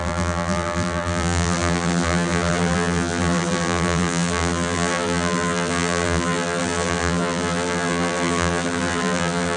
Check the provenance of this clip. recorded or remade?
remade